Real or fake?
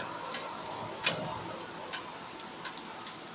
real